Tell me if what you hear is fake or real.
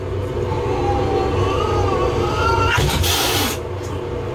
real